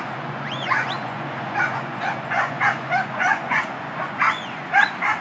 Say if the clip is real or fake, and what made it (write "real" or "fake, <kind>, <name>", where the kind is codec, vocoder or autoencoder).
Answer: fake, vocoder, Vocos